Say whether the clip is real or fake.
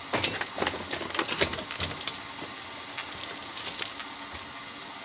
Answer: real